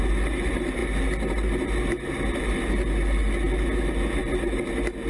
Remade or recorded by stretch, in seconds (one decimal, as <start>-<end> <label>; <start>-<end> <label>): 0.0-5.1 recorded